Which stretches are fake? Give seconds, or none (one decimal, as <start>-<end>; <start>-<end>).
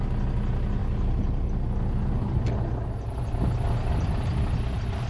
none